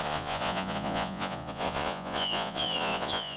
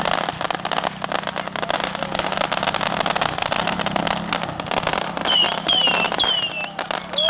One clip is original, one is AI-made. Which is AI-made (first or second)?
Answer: first